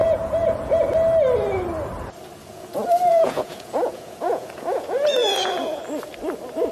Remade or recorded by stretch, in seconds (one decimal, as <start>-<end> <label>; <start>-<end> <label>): 0.0-0.8 remade; 0.8-2.4 recorded; 2.4-5.8 remade; 5.8-6.7 recorded